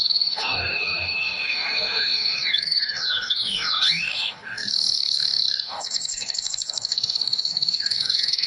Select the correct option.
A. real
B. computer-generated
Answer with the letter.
B